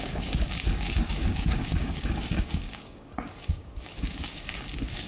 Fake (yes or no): yes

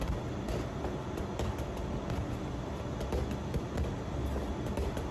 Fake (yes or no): no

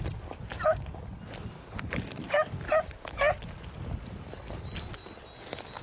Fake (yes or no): no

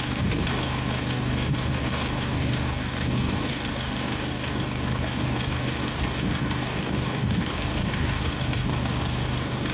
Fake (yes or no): yes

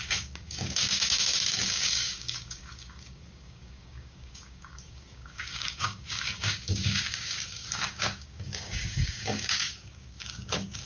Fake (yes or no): yes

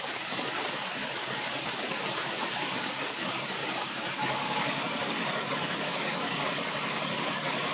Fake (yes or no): yes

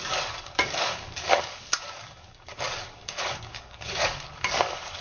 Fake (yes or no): yes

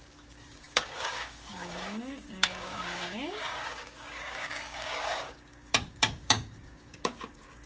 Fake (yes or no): yes